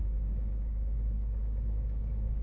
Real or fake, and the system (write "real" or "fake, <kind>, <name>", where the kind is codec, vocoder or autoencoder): fake, codec, DAC